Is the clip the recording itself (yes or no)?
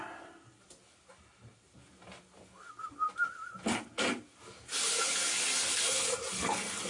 yes